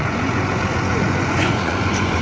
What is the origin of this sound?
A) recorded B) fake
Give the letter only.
B